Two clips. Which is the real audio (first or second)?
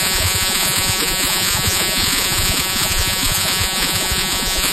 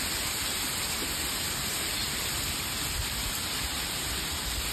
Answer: second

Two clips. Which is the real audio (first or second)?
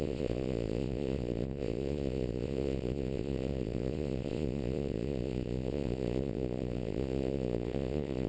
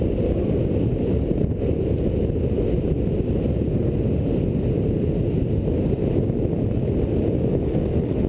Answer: second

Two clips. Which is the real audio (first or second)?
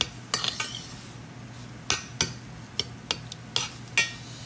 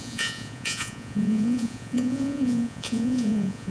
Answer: first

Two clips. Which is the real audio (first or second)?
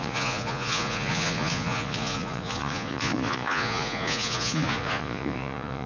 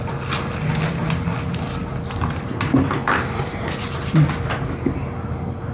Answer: second